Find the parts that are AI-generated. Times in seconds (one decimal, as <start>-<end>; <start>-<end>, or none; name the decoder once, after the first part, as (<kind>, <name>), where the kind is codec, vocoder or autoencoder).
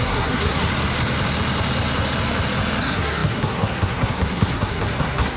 0.0-0.7 (codec, SNAC); 2.8-5.4